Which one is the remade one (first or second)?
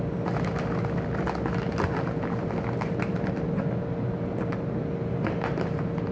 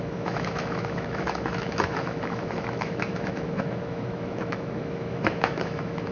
second